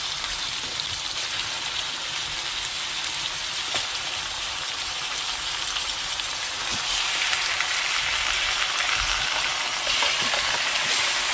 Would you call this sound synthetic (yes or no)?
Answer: no